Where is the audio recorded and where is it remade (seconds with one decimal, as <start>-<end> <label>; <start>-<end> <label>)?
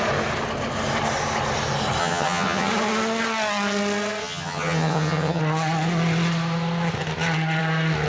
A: 0.0-2.0 recorded; 2.0-2.7 remade; 2.7-4.2 recorded; 4.2-5.4 remade; 5.4-8.1 recorded